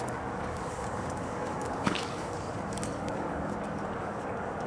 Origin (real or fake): fake